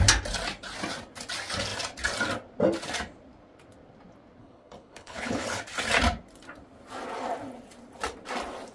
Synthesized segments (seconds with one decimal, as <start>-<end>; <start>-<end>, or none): 4.4-5.6